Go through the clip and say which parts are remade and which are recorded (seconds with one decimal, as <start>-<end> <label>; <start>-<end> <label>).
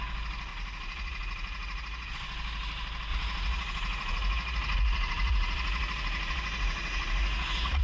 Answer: 0.0-0.5 recorded; 0.5-2.1 remade; 2.1-3.1 recorded; 3.1-7.8 remade